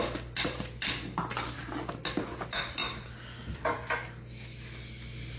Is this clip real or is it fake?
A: real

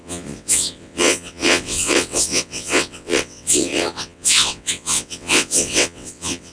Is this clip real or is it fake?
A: fake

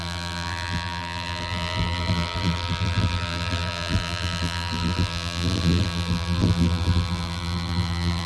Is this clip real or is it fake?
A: fake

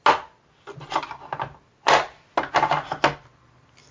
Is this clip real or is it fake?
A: real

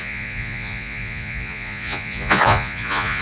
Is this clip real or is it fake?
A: fake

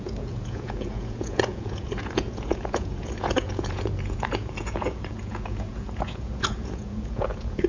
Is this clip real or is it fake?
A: fake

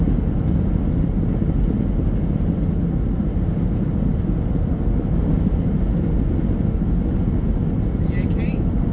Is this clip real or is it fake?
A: real